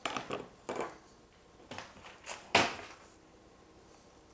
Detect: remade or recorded recorded